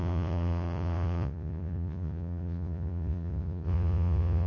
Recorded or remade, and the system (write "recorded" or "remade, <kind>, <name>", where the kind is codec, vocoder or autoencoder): remade, vocoder, Vocos